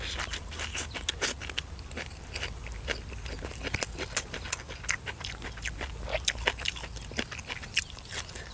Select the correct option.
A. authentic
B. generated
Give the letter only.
A